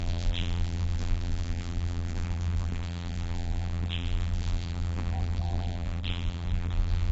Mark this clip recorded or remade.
remade